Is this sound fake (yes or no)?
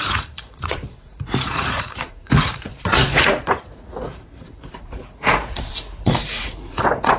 yes